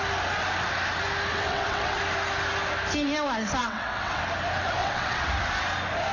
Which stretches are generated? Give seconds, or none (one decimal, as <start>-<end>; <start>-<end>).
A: 1.3-2.0; 3.6-4.2; 4.8-5.3